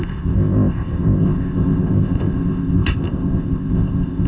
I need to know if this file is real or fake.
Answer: fake